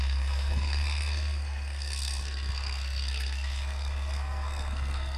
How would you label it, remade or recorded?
remade